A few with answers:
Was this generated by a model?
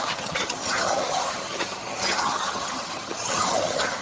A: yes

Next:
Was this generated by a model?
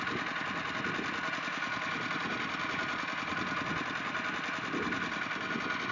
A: no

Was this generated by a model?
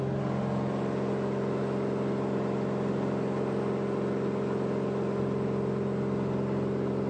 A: no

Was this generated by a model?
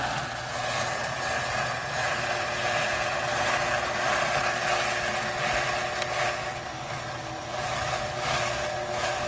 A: no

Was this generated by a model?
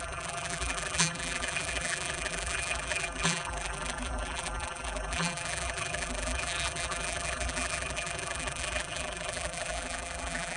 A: yes